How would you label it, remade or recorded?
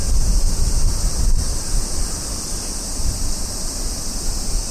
recorded